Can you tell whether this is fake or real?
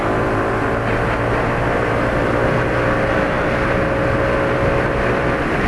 real